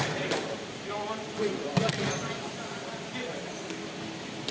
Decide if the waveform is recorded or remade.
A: recorded